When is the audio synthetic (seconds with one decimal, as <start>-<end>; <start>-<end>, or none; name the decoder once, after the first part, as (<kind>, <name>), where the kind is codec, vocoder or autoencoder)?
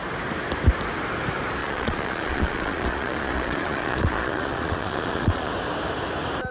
1.6-5.5 (vocoder, Vocos)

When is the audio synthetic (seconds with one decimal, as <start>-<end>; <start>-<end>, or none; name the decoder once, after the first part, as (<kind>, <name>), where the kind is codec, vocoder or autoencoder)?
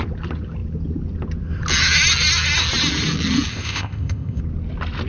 3.5-4.4 (codec, ZipCodec)